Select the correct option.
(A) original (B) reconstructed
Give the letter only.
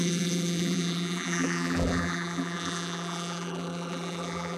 B